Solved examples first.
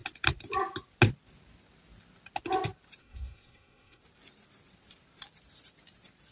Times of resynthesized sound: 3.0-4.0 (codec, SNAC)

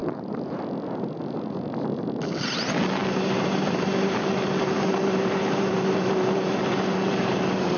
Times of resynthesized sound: 0.0-0.6 (vocoder, BigVGAN v2); 3.0-7.8

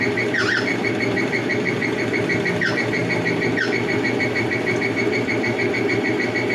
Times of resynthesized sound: none

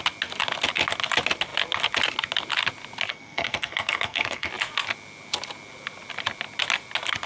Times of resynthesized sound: 3.1-4.5 (codec, SNAC)

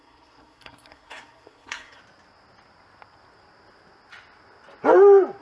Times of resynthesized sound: 0.0-2.0 (codec, SNAC)